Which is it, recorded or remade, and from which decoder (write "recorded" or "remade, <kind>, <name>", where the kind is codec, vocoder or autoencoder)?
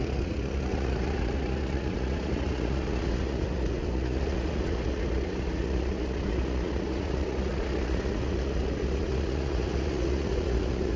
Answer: remade, vocoder, Vocos